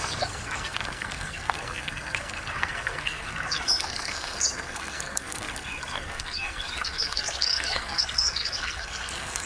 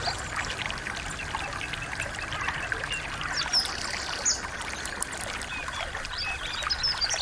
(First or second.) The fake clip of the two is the first